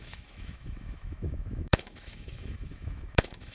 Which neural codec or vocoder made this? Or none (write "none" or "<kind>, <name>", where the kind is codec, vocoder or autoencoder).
autoencoder, DAC-VAE